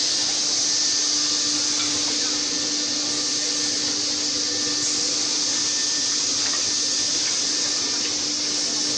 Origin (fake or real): real